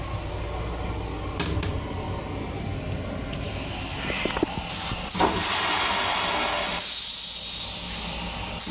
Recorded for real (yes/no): yes